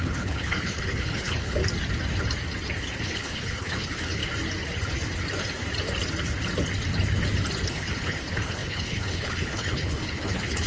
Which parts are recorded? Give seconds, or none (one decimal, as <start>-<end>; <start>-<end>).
1.6-3.0; 4.2-7.7